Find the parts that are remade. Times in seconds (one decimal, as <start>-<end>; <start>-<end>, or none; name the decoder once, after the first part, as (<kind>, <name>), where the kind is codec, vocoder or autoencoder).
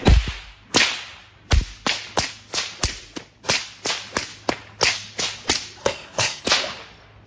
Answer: 5.8-6.4 (codec, SNAC)